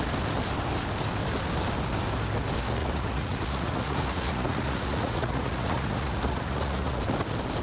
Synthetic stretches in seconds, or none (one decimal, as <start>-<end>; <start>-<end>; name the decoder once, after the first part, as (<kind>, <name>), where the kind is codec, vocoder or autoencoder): 2.8-7.0 (vocoder, Vocos)